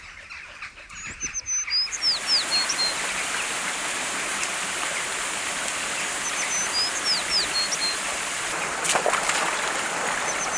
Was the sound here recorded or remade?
recorded